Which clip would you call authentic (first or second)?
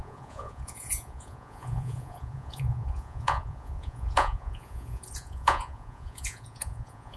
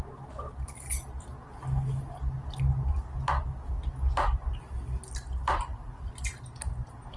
second